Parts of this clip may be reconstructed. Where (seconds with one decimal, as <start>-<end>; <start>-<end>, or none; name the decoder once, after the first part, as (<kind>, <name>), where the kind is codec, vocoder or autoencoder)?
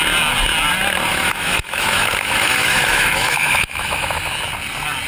1.1-4.2 (autoencoder, DAC-VAE)